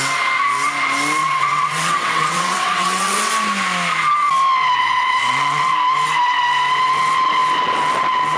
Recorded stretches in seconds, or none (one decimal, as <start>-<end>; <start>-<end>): 0.0-1.2; 3.3-4.8; 5.7-8.4